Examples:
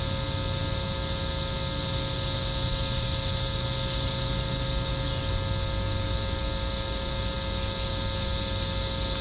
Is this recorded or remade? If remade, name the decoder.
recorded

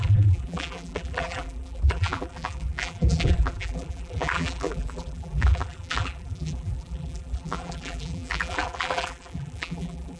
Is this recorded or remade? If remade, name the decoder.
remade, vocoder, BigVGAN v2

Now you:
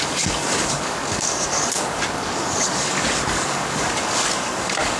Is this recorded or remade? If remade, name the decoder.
remade, codec, DAC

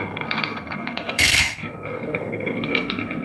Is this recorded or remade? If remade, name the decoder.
remade, codec, SNAC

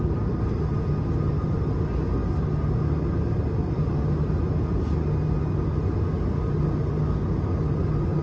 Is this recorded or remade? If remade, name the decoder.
recorded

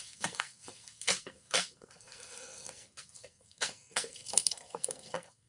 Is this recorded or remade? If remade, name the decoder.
remade, codec, SNAC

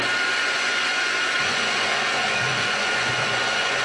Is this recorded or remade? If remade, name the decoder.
remade, vocoder, Vocos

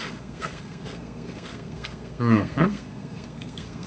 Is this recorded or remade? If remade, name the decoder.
remade, codec, SNAC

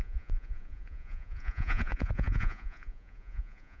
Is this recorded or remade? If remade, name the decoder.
remade, vocoder, Vocos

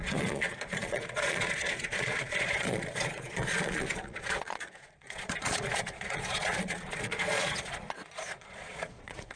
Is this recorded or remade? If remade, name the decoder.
remade, vocoder, Vocos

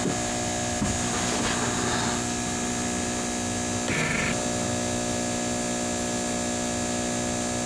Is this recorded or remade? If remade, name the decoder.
recorded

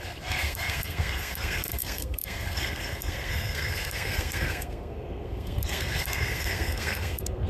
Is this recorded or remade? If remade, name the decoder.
remade, codec, SNAC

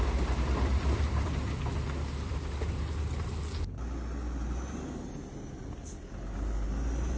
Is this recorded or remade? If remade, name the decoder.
recorded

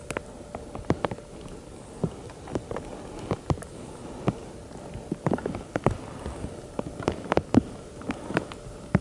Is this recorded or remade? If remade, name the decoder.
recorded